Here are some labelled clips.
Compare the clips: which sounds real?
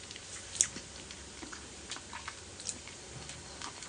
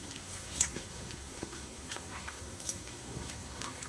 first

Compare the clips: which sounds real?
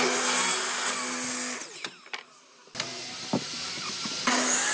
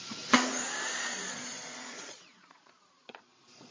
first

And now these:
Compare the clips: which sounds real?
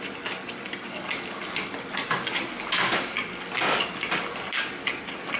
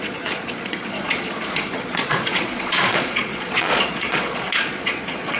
first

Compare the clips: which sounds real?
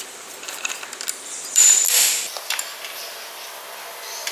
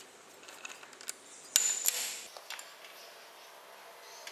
second